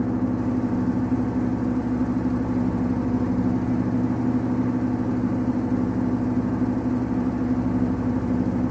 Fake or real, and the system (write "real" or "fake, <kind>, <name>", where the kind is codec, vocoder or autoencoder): real